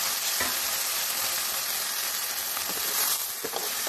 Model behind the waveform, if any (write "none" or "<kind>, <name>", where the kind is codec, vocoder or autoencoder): none